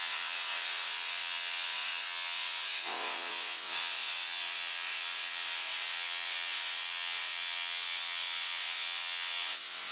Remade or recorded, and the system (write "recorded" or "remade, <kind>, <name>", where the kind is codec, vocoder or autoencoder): remade, vocoder, WaveNeXt